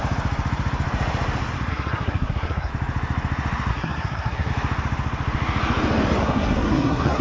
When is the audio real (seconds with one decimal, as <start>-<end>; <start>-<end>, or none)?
0.0-1.7; 2.7-3.7; 4.5-6.2